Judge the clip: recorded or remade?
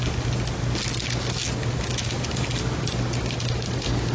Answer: recorded